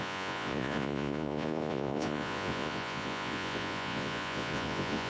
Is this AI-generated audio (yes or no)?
yes